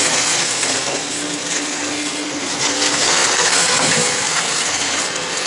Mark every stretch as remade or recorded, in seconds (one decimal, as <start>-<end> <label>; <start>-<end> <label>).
0.0-5.5 remade